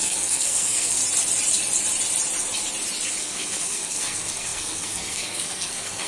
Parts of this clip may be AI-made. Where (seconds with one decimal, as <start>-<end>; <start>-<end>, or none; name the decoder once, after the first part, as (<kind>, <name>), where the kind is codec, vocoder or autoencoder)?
0.0-1.0 (codec, SNAC); 3.2-6.1